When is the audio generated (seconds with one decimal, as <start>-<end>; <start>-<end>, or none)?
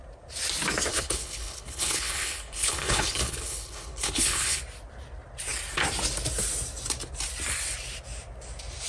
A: 0.9-4.6